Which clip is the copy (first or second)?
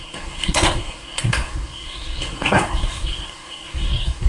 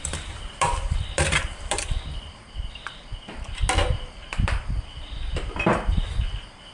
first